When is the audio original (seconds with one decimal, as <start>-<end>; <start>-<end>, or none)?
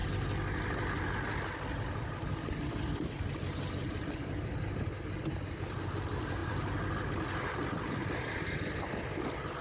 2.5-6.4; 7.1-9.6